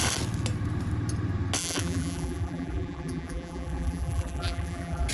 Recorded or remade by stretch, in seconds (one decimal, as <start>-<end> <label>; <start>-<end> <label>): 0.0-1.6 recorded; 1.6-5.1 remade